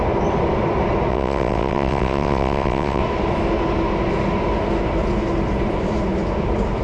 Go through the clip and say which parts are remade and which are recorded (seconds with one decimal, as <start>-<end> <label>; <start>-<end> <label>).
0.0-1.1 recorded; 1.1-3.0 remade; 3.0-6.8 recorded